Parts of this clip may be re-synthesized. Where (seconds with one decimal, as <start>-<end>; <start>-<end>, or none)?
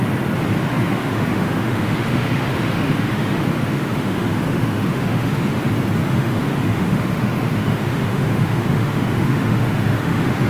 0.7-5.6; 6.0-10.5